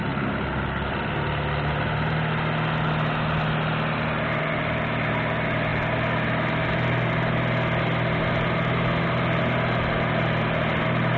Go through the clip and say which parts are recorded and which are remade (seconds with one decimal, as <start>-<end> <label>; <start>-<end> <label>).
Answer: 0.0-11.2 recorded